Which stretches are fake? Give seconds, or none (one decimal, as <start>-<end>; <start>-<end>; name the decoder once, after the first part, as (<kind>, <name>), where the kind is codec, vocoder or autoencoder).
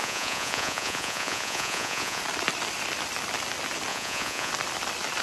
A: 0.0-2.2 (vocoder, Vocos); 3.9-4.5